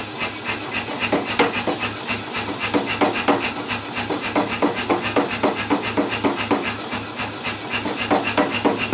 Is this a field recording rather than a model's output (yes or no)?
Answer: yes